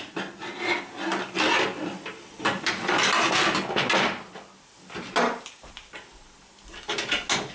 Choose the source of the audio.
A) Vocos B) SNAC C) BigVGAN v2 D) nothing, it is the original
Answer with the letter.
D